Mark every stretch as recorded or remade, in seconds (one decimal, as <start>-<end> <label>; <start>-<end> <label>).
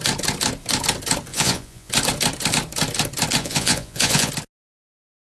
0.0-1.3 recorded; 1.3-1.9 remade; 1.9-3.4 recorded; 3.4-4.3 remade; 4.3-5.3 recorded